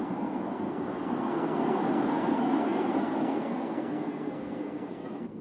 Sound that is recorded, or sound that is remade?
remade